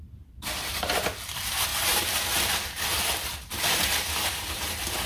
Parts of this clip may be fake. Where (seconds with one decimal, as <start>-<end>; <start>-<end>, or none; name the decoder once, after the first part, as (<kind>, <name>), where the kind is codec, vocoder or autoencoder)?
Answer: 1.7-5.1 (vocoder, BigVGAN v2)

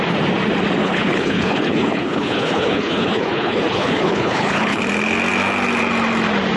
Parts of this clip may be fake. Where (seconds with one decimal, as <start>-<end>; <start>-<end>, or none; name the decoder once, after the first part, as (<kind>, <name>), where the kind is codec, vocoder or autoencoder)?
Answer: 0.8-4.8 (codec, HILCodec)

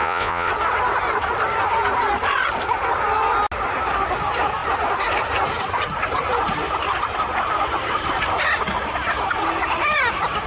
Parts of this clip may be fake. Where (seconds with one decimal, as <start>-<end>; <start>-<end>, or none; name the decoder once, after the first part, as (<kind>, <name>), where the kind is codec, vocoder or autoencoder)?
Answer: 0.0-0.5 (vocoder, Vocos)